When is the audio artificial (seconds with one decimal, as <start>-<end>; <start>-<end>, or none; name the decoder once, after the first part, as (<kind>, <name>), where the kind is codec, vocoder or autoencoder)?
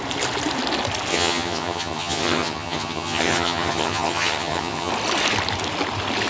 1.1-4.9 (vocoder, HiFi-GAN)